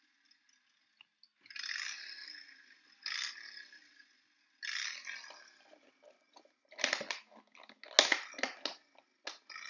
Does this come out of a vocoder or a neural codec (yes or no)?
no